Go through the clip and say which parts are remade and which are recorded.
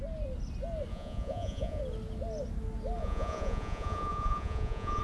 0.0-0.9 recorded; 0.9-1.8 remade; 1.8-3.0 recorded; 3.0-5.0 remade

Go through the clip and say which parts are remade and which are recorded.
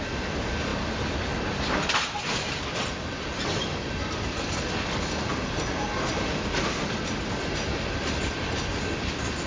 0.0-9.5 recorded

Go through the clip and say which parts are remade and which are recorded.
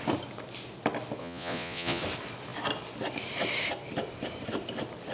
0.0-1.2 recorded; 1.2-2.0 remade; 2.0-5.1 recorded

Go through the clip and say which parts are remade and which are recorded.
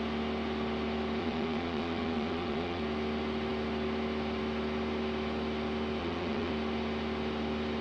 0.0-1.2 recorded; 1.2-2.8 remade; 2.8-6.0 recorded; 6.0-6.5 remade; 6.5-7.8 recorded